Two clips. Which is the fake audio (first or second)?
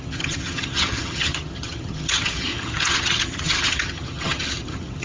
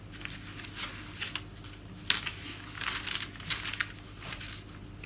first